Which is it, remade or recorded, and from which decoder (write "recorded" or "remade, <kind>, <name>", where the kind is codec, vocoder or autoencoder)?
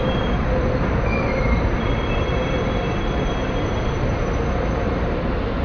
remade, vocoder, BigVGAN v2